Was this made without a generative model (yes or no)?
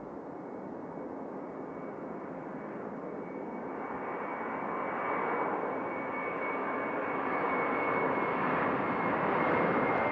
no